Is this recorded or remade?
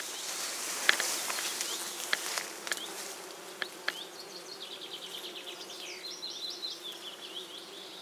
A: recorded